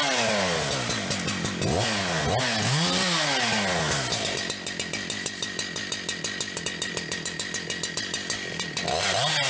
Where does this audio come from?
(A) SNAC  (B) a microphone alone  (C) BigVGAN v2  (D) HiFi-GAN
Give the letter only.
B